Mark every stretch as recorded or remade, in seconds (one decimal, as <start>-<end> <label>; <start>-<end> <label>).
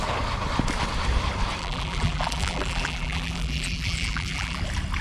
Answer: 0.0-1.6 recorded; 1.6-4.6 remade; 4.6-5.0 recorded